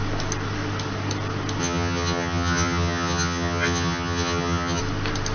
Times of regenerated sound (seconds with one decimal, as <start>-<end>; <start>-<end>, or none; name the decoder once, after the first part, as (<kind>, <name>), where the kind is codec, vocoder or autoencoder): 1.6-4.8 (vocoder, HiFi-GAN)

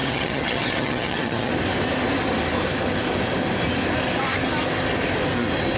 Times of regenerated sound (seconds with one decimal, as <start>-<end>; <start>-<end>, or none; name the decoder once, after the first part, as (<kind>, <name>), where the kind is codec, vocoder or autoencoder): 0.0-1.5 (vocoder, HiFi-GAN)

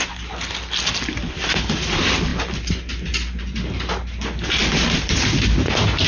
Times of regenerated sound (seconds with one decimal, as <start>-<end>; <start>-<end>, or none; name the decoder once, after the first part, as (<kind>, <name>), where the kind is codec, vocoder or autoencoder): none